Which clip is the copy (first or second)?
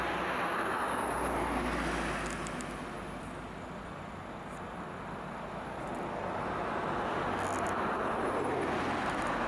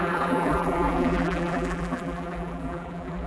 second